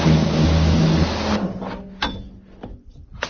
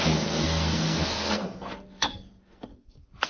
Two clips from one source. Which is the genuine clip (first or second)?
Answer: first